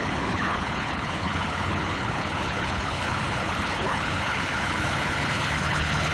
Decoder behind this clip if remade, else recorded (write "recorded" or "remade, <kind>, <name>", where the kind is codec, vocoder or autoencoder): remade, codec, HILCodec